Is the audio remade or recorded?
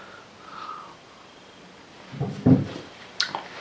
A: recorded